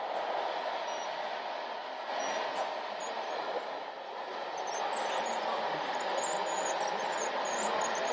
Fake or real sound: real